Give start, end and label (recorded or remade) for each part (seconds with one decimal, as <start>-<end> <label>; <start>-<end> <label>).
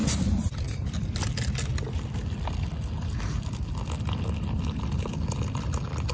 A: 0.0-6.1 recorded